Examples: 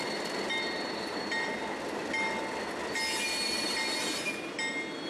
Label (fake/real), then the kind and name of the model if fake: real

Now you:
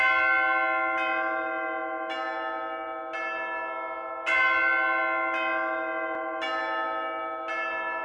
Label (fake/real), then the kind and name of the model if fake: real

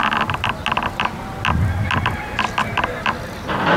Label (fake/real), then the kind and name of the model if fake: real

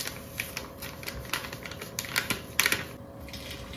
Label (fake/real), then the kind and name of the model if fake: real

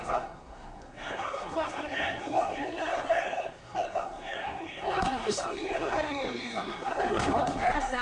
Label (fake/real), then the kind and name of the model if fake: fake, codec, SNAC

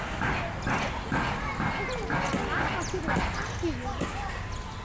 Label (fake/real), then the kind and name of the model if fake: real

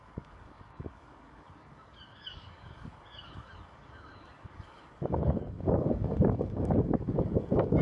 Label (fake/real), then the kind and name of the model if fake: fake, codec, DAC